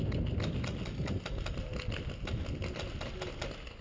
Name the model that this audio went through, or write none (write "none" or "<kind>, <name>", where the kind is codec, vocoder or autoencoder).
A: none